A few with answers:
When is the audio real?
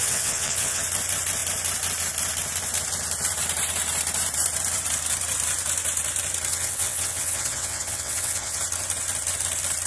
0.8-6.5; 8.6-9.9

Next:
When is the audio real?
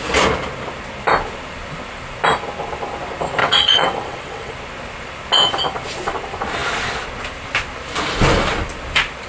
0.0-3.4; 4.5-9.3